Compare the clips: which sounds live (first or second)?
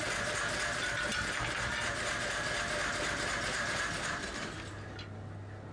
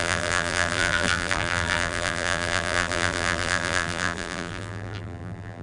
first